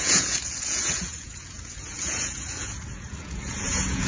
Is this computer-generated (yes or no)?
yes